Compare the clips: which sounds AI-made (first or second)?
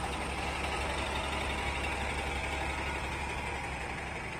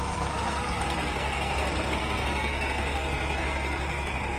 second